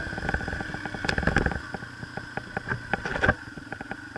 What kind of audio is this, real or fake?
real